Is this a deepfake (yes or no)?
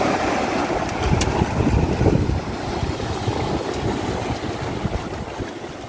no